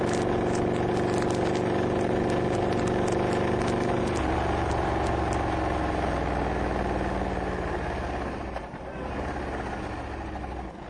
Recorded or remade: recorded